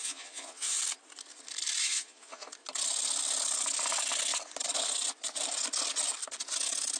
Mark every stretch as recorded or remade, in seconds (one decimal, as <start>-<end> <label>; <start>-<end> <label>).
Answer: 0.0-0.8 remade; 0.8-1.8 recorded; 1.8-2.5 remade; 2.5-7.0 recorded